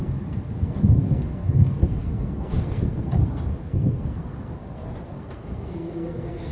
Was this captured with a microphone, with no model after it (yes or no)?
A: no